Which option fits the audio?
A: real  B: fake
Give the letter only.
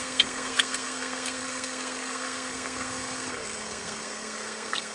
B